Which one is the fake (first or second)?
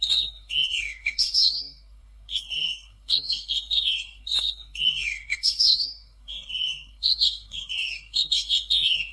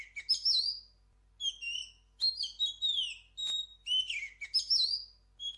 first